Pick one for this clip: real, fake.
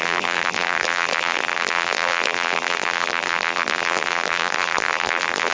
fake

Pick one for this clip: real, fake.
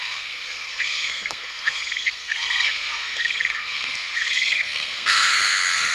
fake